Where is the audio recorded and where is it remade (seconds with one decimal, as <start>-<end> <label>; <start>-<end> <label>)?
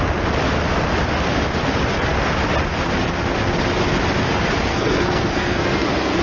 0.0-4.7 recorded; 4.7-6.2 remade